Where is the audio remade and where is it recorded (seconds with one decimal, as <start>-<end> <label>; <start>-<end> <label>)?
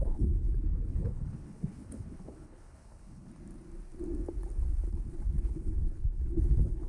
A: 0.0-3.3 remade; 3.3-4.9 recorded; 4.9-6.9 remade